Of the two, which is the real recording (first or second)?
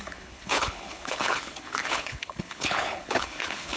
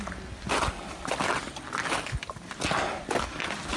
second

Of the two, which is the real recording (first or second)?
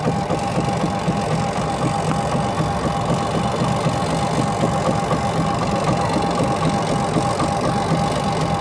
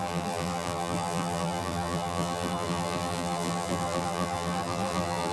first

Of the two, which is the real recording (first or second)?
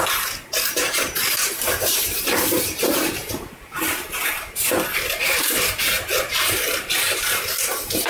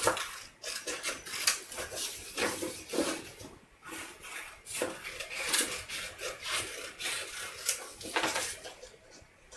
second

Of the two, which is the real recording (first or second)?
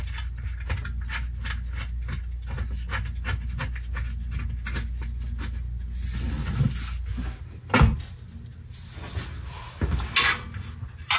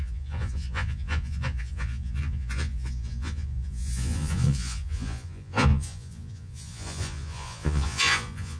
first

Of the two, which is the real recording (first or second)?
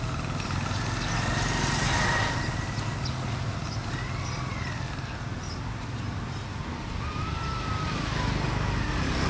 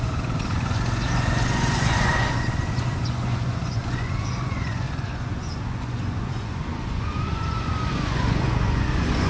first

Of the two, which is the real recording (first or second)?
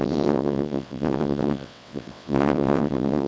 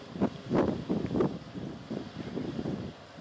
second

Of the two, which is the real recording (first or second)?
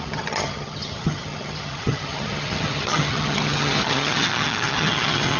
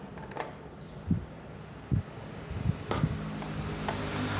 second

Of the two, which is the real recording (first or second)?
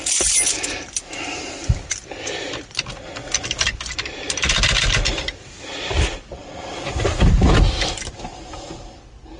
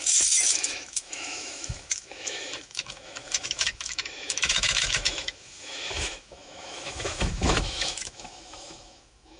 first